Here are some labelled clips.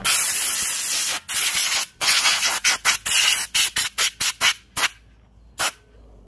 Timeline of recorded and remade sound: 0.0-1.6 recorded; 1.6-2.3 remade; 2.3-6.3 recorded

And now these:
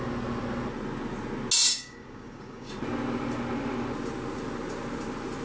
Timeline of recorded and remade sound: 0.0-1.7 recorded; 1.7-2.7 remade; 2.7-5.4 recorded

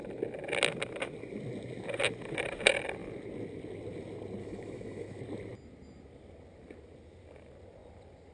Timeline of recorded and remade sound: 0.0-4.4 recorded; 4.4-5.2 remade; 5.2-8.3 recorded

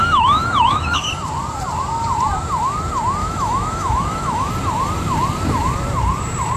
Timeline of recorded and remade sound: 0.0-1.1 remade; 1.1-3.2 recorded; 3.2-4.5 remade; 4.5-6.6 recorded

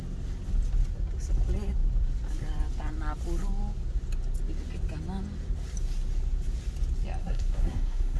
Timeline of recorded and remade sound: 0.0-7.2 recorded; 7.2-8.2 remade

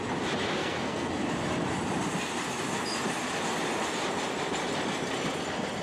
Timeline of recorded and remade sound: 0.0-0.6 recorded; 0.6-1.1 remade; 1.1-5.8 recorded

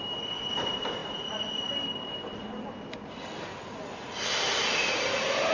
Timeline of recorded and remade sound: 0.0-5.5 recorded

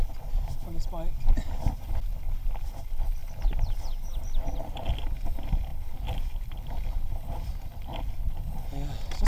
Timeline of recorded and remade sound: 0.0-9.3 recorded